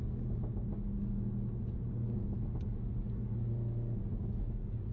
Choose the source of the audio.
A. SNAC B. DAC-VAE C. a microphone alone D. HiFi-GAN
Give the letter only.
C